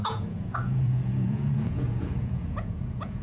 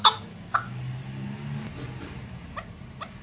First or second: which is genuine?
second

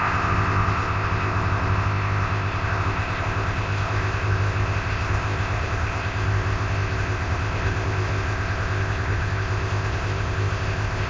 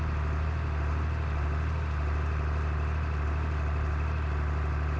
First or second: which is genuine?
second